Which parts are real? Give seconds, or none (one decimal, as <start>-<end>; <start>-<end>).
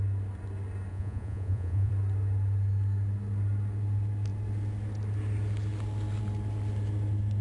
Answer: 0.0-0.9; 1.9-7.4